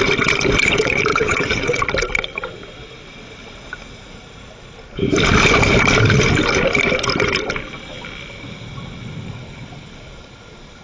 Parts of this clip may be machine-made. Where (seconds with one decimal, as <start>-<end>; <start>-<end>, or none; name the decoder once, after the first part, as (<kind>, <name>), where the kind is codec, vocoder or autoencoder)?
1.1-1.8 (vocoder, WaveNeXt)